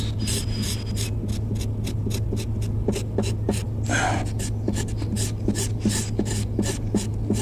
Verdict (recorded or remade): recorded